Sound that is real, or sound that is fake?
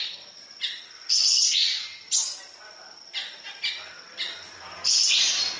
real